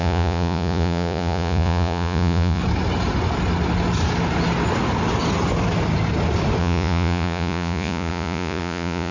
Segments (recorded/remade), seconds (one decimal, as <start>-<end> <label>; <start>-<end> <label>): 0.0-2.6 remade; 2.6-6.6 recorded; 6.6-9.1 remade